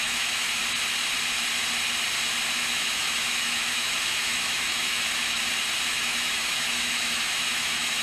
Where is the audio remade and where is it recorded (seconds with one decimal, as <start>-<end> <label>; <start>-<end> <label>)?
0.0-0.6 remade; 0.6-2.6 recorded; 2.6-5.4 remade; 5.4-5.9 recorded; 5.9-8.0 remade